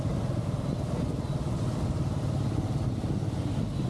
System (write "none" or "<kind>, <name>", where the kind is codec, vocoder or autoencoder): none